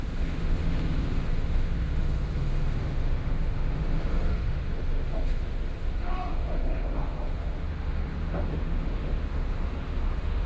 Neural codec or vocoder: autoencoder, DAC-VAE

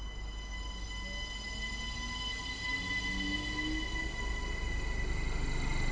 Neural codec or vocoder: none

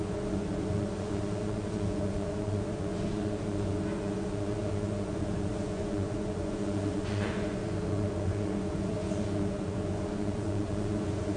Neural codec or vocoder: vocoder, Vocos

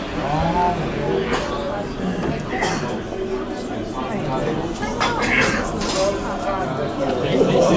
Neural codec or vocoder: none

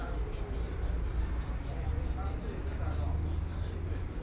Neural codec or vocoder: none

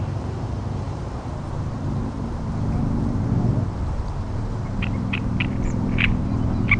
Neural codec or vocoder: vocoder, BigVGAN v2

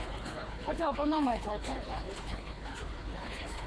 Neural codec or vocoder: codec, HILCodec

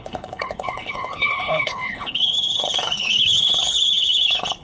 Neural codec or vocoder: codec, HILCodec